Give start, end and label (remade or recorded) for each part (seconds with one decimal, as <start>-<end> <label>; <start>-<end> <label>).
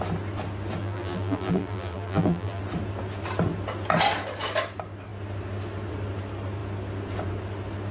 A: 0.0-0.8 recorded; 0.8-2.6 remade; 2.6-7.9 recorded